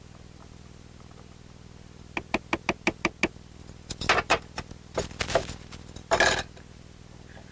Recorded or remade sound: recorded